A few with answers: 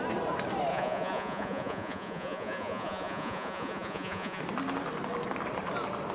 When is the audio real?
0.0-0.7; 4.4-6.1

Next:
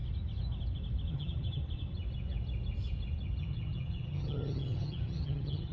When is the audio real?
0.0-1.1; 1.6-3.4